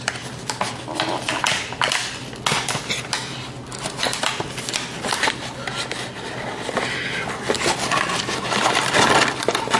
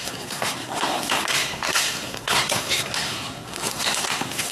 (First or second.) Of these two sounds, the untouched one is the first